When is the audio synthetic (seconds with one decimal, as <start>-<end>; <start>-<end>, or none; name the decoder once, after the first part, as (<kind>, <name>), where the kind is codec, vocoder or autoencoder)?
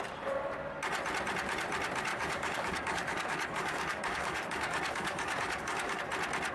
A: 2.1-6.0 (codec, DAC)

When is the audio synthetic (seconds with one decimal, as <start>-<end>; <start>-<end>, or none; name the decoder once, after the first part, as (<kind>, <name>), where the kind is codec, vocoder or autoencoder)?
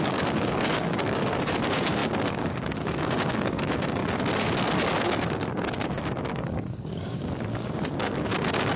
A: 0.0-4.0 (codec, DAC); 5.0-8.8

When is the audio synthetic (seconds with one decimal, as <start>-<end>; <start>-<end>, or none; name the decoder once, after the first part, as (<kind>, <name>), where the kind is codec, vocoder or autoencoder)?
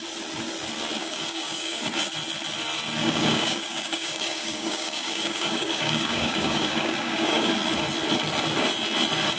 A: 1.0-1.8 (codec, DAC); 3.0-7.5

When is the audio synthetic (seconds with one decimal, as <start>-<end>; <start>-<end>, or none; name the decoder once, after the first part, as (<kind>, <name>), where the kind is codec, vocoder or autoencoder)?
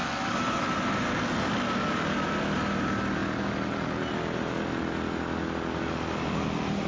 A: none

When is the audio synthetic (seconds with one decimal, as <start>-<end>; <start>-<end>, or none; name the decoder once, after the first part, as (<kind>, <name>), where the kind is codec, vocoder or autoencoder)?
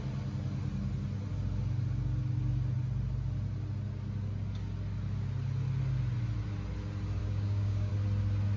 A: 7.2-7.9 (codec, DAC)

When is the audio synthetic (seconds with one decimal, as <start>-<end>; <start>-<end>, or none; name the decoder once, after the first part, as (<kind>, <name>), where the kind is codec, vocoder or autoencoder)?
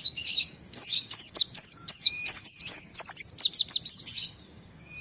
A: 0.0-2.9 (codec, DAC); 3.9-5.0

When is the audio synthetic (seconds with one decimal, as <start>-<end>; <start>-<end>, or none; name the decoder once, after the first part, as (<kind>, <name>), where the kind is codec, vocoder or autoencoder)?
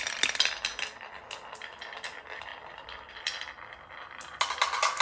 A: none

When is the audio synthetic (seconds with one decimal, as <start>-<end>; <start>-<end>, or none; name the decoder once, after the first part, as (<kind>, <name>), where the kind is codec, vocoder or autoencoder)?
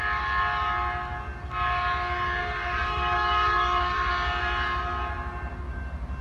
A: 2.4-4.1 (codec, DAC)